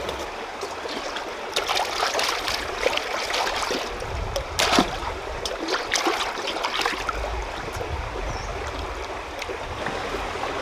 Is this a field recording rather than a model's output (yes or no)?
yes